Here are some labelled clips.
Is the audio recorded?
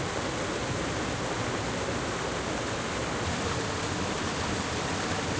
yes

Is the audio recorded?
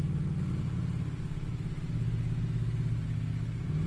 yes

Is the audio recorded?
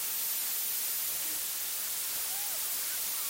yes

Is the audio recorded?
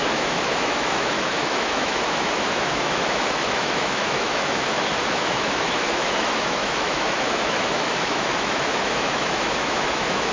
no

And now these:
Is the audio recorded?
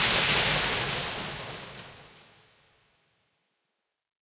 yes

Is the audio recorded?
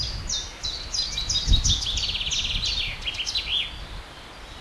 yes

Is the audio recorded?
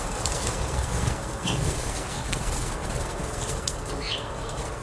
no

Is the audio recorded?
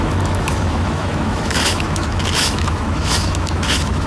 no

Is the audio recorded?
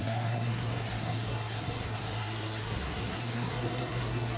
no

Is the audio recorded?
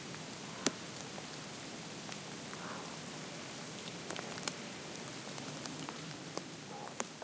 no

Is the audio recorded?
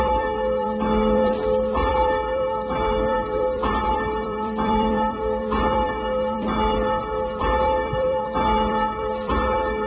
no